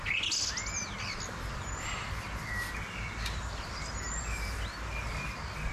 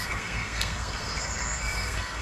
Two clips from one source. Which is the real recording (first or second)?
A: first